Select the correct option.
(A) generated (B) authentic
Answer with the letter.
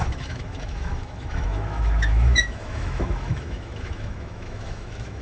A